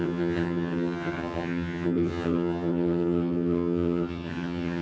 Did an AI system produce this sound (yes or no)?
yes